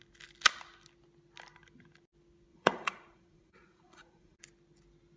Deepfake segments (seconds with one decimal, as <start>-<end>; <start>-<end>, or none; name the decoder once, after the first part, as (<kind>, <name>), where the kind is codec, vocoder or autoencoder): 2.5-4.4 (vocoder, Vocos)